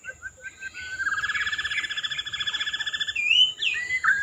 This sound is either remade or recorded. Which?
recorded